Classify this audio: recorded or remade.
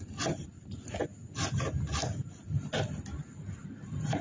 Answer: recorded